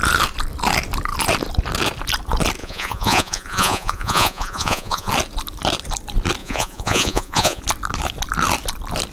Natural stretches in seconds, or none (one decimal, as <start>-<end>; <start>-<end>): 0.0-2.6; 5.1-6.4; 7.6-9.1